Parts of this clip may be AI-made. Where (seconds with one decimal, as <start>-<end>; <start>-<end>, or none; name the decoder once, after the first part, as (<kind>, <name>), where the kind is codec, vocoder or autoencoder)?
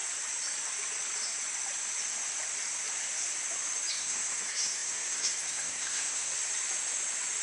3.9-6.3 (codec, SNAC)